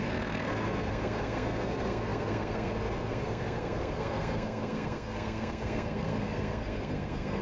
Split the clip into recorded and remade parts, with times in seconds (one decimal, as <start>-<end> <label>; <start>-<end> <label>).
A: 0.0-7.4 remade